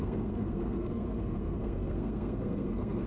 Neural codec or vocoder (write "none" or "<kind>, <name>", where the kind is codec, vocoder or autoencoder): codec, SNAC